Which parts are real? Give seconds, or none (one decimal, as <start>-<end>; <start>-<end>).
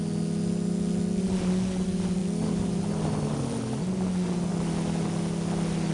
0.0-5.9